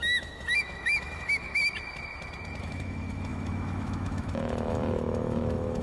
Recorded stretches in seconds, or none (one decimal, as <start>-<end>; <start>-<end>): 1.6-2.6